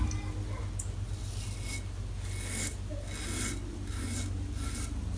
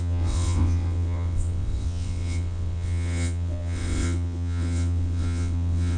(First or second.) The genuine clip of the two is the first